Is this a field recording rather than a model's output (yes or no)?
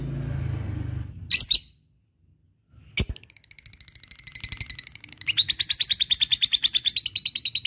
yes